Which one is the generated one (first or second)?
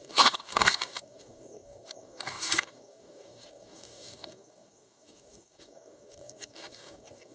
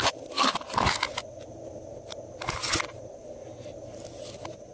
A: first